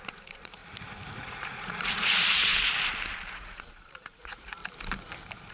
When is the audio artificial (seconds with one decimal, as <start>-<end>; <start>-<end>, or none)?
0.0-0.6; 1.1-2.5; 3.3-4.6